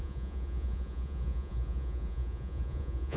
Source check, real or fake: fake